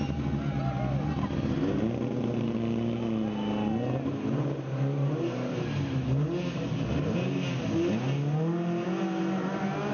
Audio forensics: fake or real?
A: real